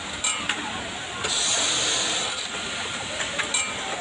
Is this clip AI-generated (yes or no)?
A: no